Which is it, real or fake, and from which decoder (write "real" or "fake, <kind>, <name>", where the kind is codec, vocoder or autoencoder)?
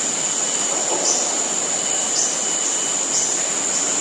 real